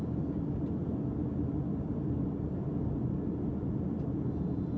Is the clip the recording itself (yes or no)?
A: yes